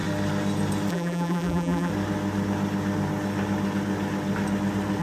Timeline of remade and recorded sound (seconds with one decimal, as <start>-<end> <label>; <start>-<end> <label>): 0.0-0.9 recorded; 0.9-1.9 remade; 1.9-5.0 recorded